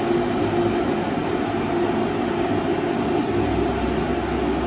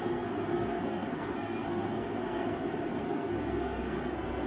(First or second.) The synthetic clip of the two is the second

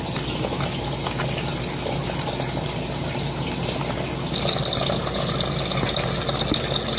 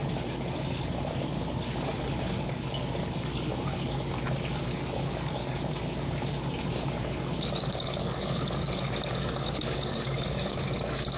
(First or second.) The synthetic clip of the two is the second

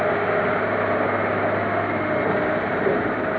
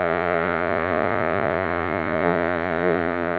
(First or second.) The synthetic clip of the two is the second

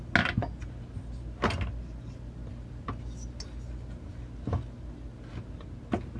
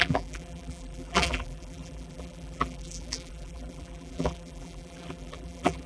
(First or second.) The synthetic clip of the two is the second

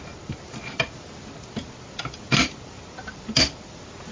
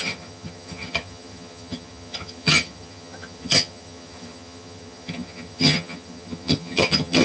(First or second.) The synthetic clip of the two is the second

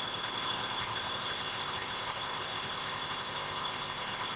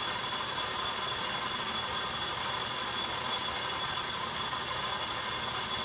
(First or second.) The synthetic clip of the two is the first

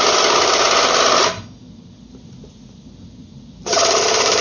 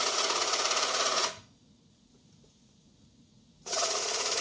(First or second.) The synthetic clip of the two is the second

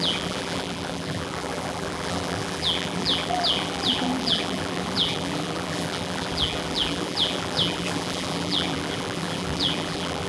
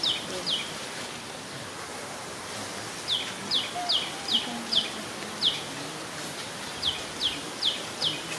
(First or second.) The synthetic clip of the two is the first